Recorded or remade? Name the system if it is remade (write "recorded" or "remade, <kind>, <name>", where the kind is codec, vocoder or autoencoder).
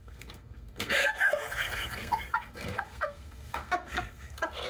remade, codec, SNAC